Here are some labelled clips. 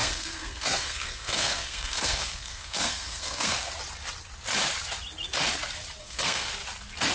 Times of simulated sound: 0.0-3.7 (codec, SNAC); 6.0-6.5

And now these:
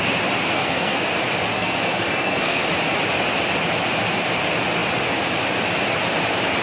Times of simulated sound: 0.5-1.1 (codec, SNAC); 1.5-2.6